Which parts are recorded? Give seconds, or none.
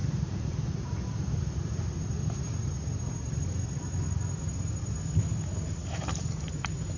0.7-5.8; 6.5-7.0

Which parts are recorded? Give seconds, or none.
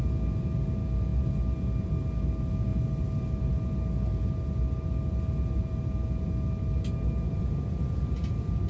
0.0-8.7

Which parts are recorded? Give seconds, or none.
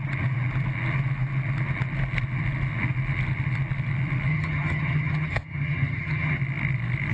0.0-4.3; 6.4-7.1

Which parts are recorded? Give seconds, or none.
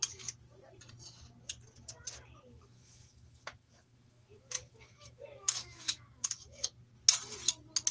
0.0-2.5; 6.7-7.9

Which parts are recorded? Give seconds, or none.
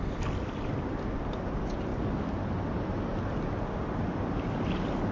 0.0-5.1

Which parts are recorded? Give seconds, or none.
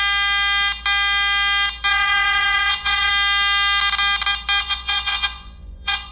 0.0-1.9; 3.1-4.6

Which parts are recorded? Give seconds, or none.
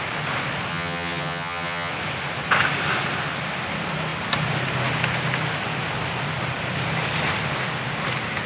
0.0-0.7; 1.9-8.5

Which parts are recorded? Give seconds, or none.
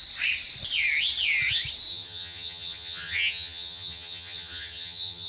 0.0-1.9